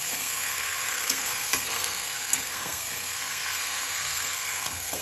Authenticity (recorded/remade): remade